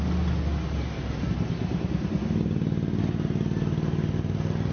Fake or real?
real